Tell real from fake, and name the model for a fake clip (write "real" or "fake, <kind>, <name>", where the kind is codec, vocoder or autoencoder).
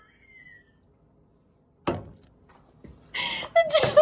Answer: real